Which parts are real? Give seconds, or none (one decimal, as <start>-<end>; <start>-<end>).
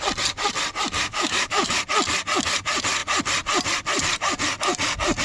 0.0-1.1; 1.8-5.2